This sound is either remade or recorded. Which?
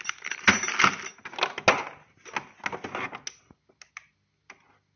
recorded